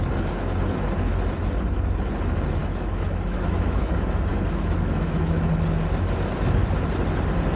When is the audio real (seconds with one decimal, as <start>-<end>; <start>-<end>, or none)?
0.0-2.6; 3.9-4.3; 5.5-7.6